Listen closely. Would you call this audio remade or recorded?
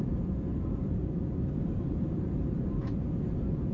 remade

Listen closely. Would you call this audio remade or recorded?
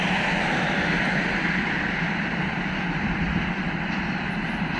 recorded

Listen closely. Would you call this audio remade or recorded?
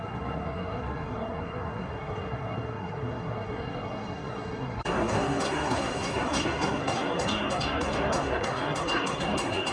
remade